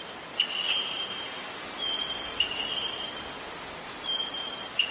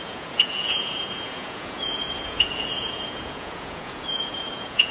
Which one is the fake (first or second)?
second